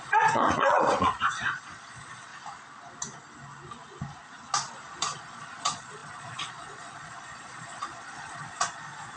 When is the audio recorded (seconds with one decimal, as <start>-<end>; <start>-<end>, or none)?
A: 2.3-5.2